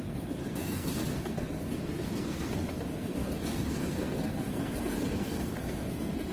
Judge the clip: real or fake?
fake